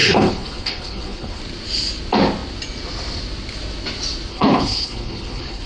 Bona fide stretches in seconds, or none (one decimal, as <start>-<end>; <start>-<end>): 1.4-4.3

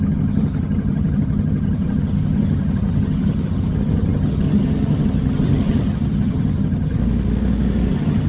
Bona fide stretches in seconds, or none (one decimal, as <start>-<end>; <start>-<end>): 7.0-7.9

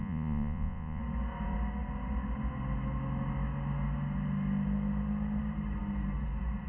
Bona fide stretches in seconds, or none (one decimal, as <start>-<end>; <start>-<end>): 1.0-6.7

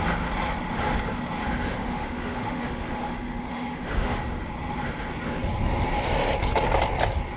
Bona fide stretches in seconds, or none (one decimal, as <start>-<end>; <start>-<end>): 0.0-1.8; 4.2-7.4